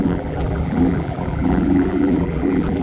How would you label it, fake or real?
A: fake